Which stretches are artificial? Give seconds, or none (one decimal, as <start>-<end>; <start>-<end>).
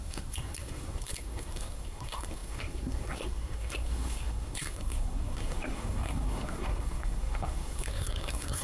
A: 0.0-8.6